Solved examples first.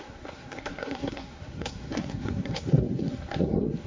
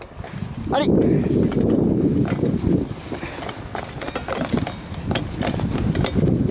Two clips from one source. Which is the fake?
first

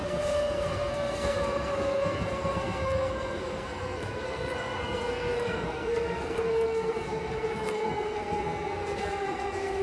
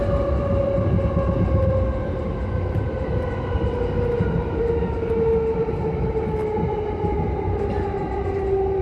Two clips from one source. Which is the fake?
first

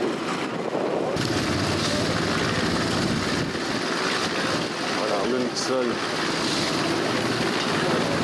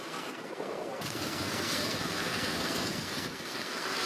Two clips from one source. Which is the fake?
second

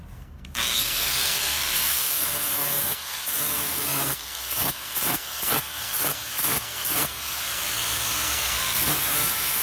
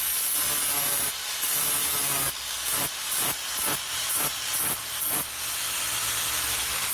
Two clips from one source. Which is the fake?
first